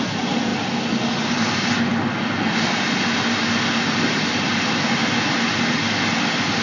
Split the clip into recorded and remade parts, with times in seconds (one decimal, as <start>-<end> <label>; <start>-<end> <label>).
0.0-6.6 recorded